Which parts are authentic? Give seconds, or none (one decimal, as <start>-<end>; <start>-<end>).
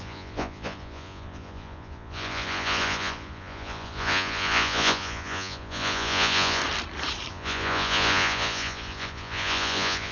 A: 6.6-7.3